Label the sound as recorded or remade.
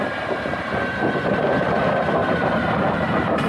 remade